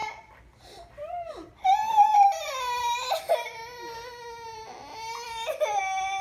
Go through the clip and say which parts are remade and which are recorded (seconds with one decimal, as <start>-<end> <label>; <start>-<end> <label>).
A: 0.0-1.7 remade; 1.7-6.2 recorded